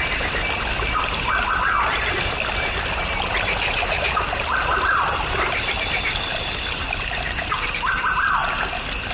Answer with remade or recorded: recorded